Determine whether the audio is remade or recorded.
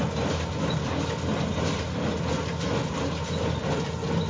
recorded